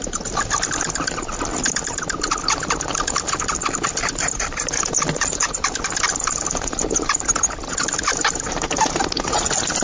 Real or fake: real